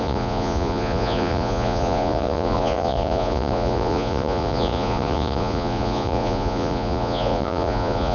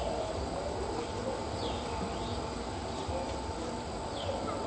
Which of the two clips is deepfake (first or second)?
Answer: first